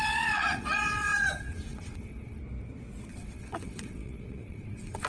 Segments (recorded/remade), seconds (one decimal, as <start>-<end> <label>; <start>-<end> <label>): 0.0-2.4 remade; 2.4-3.1 recorded; 3.1-5.1 remade